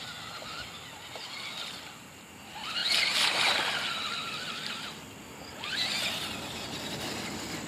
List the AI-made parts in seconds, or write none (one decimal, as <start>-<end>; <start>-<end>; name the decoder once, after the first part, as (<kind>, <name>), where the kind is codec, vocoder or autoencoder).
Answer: none